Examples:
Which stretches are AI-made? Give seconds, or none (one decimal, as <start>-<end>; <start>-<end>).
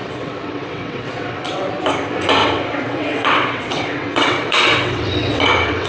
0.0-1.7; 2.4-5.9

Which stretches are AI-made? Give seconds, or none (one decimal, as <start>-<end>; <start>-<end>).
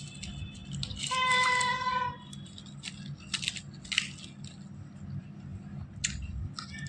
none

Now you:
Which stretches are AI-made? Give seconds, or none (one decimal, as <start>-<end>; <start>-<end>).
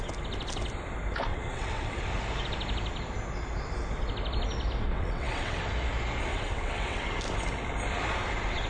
1.3-2.0; 4.9-5.6; 6.3-7.1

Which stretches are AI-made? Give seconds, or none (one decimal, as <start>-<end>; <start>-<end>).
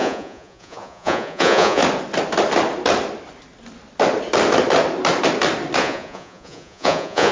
0.0-1.8; 5.8-7.3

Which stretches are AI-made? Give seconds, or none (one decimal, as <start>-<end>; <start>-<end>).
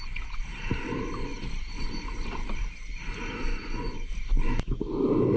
3.5-4.1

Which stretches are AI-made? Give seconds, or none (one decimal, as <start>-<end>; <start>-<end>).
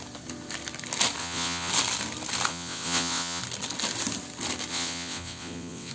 1.2-1.7; 2.5-3.4; 4.7-5.9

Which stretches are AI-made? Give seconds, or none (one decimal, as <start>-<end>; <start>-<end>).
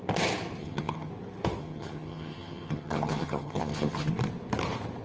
0.6-1.1; 1.6-4.1